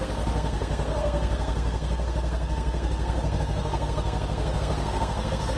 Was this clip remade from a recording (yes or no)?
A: yes